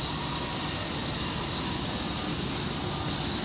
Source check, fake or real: real